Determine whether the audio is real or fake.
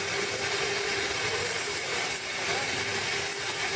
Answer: real